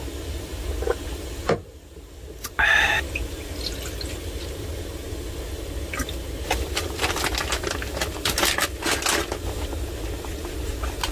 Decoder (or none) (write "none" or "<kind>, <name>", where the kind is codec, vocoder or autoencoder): none